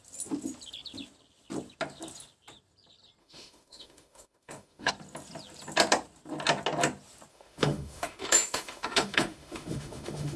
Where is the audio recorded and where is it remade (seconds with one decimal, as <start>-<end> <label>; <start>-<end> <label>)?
0.0-3.2 recorded; 3.2-4.9 remade; 4.9-7.3 recorded; 7.3-10.4 remade

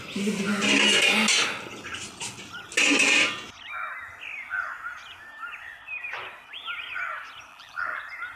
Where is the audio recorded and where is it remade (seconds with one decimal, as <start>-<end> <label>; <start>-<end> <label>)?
0.0-7.5 recorded; 7.5-8.0 remade; 8.0-8.4 recorded

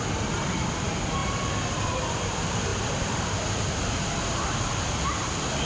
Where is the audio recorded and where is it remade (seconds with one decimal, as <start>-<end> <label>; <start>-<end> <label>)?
0.0-5.6 recorded

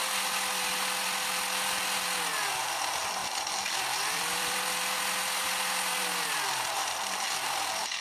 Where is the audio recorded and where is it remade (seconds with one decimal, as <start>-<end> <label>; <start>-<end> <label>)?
0.0-3.2 recorded; 3.2-4.7 remade; 4.7-8.0 recorded

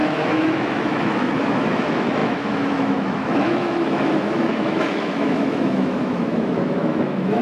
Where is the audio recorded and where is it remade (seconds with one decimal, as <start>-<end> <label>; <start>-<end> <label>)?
0.0-7.4 remade